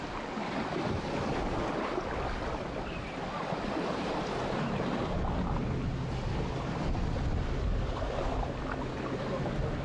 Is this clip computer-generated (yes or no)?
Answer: no